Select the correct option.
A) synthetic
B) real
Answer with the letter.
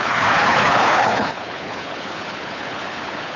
A